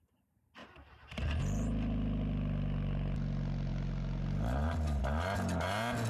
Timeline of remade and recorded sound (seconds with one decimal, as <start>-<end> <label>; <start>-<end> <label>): 0.0-0.6 recorded; 0.6-1.4 remade; 1.4-6.1 recorded